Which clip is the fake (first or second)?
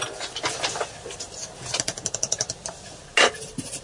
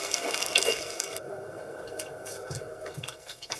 second